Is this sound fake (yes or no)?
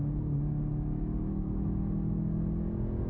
no